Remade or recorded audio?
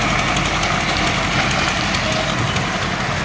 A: recorded